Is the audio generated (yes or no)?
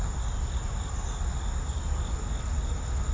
no